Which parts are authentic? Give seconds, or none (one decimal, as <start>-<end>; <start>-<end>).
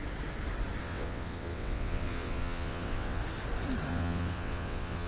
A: 0.0-0.8; 3.2-3.9